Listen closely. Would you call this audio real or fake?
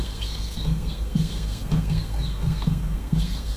fake